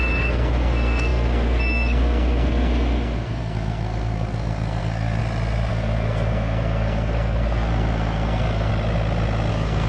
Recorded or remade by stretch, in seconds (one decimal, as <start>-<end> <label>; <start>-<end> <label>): 0.0-5.2 remade; 5.2-5.7 recorded; 5.7-8.7 remade; 8.7-9.5 recorded; 9.5-9.9 remade